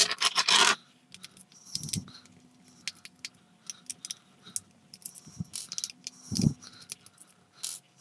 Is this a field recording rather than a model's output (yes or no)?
yes